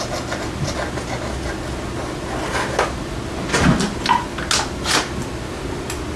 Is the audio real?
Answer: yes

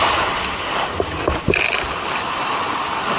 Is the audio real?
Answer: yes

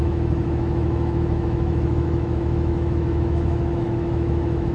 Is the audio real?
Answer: no